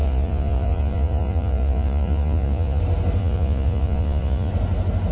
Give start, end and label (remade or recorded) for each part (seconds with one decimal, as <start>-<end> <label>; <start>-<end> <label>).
0.0-2.8 remade; 2.8-3.2 recorded; 3.2-4.5 remade; 4.5-5.1 recorded

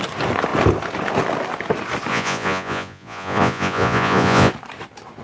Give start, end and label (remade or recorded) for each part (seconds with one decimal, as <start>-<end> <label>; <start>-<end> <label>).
0.0-2.1 recorded; 2.1-4.5 remade; 4.5-5.2 recorded

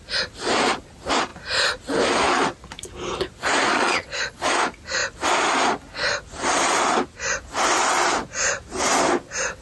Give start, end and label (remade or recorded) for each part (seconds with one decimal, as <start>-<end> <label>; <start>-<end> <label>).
0.0-3.7 recorded; 3.7-4.5 remade; 4.5-9.6 recorded

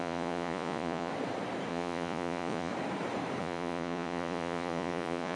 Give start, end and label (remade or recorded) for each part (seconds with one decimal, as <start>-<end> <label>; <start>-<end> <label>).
0.0-1.1 remade; 1.1-1.7 recorded; 1.7-2.7 remade; 2.7-3.4 recorded; 3.4-5.4 remade

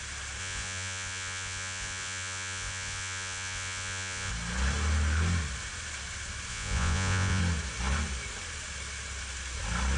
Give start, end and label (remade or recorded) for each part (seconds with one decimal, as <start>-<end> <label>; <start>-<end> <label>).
0.0-0.4 recorded; 0.4-4.3 remade; 4.3-6.5 recorded; 6.5-7.4 remade; 7.4-10.0 recorded

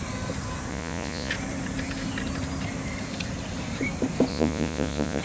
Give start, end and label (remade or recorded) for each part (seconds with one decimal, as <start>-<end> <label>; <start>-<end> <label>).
0.0-0.7 recorded; 0.7-1.3 remade; 1.3-4.3 recorded; 4.3-5.2 remade